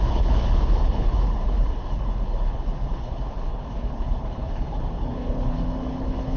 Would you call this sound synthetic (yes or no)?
yes